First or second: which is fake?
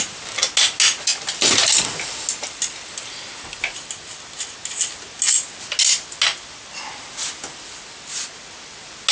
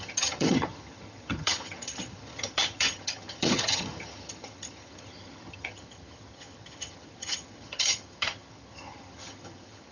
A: second